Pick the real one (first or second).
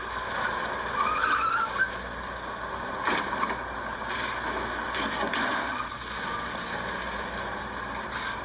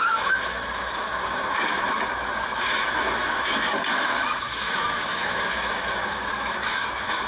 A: first